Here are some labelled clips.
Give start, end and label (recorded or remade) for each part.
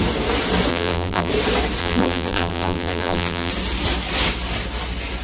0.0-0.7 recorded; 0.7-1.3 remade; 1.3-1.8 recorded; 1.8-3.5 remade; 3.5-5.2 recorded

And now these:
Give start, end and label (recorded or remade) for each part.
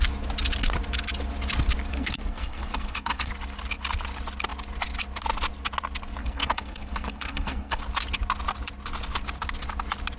0.0-1.9 recorded; 1.9-3.3 remade; 3.3-6.2 recorded; 6.2-7.8 remade; 7.8-10.2 recorded